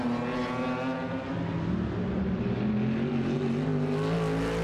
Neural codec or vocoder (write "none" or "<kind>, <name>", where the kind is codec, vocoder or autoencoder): none